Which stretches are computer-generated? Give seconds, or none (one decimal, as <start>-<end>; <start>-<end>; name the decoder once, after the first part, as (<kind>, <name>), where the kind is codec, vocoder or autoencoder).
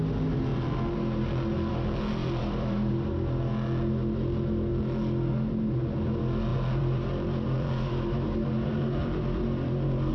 2.2-2.9 (vocoder, BigVGAN v2); 6.5-10.1